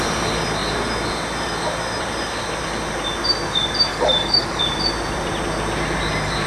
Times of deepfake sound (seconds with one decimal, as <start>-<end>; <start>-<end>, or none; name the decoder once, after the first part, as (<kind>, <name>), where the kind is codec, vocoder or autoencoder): 3.9-4.6 (codec, DAC)